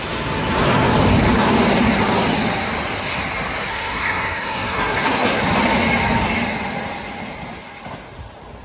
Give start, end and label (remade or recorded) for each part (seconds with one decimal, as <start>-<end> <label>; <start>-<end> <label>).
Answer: 0.0-3.7 recorded; 3.7-5.4 remade; 5.4-8.6 recorded